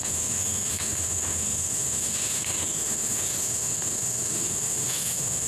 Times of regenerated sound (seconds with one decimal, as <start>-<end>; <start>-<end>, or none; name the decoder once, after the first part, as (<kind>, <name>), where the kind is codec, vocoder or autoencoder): 0.0-5.5 (autoencoder, DAC-VAE)